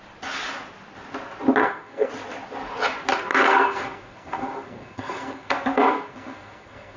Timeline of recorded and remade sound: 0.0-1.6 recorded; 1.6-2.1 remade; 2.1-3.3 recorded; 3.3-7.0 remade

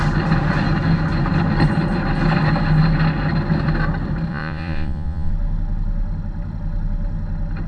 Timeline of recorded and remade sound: 0.0-4.3 recorded; 4.3-5.3 remade; 5.3-7.7 recorded

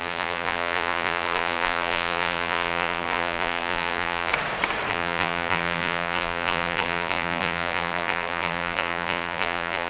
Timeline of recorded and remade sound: 0.0-4.3 remade; 4.3-4.9 recorded; 4.9-9.9 remade

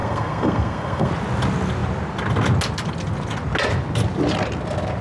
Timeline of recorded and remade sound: 0.0-1.1 remade; 1.1-5.0 recorded